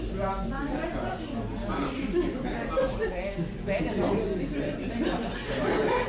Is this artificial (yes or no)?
no